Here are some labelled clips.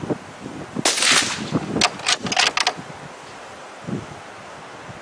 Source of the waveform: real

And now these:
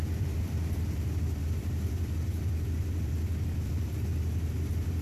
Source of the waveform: fake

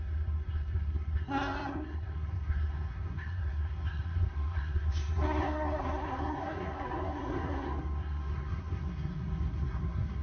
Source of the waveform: fake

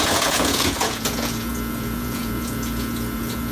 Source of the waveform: fake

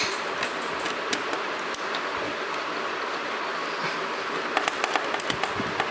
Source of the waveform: real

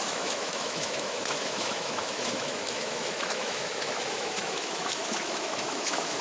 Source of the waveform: fake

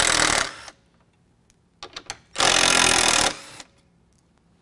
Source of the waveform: real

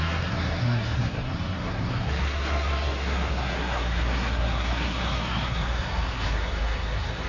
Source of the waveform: fake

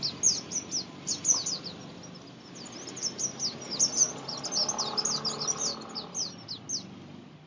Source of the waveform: real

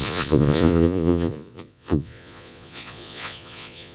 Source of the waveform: fake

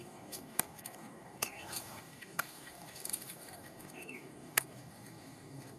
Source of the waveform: fake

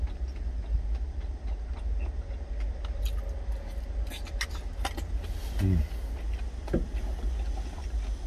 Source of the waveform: real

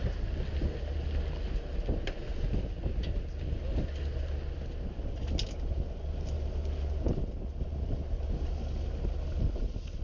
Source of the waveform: real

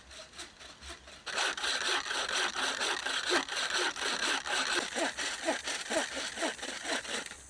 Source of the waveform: real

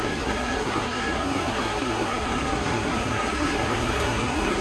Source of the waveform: fake